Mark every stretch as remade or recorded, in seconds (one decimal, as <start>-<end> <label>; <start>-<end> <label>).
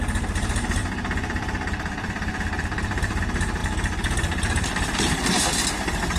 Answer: 0.0-0.8 recorded; 0.8-3.2 remade; 3.2-6.2 recorded